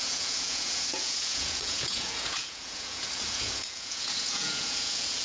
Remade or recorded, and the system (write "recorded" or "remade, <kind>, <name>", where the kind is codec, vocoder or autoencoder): remade, vocoder, Vocos